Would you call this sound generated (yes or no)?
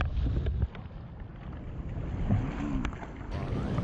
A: no